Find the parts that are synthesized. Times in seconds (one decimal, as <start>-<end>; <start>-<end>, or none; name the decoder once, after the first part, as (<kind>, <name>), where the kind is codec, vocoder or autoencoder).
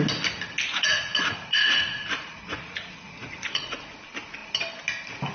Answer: 0.7-3.9 (vocoder, Vocos)